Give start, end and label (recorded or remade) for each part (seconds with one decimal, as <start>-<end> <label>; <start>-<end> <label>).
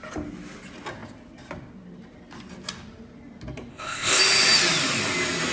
0.0-3.7 recorded; 3.7-4.2 remade; 4.2-5.5 recorded